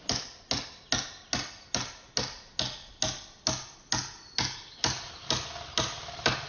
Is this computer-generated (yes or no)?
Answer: no